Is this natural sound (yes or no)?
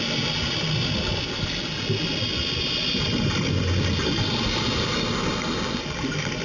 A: yes